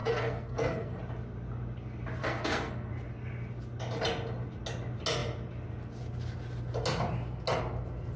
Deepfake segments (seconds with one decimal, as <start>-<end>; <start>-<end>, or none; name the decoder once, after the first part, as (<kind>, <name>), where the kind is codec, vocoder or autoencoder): 0.0-1.0 (codec, SNAC); 2.2-2.9